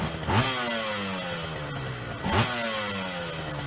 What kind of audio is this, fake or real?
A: real